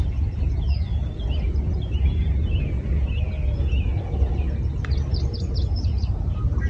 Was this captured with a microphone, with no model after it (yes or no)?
yes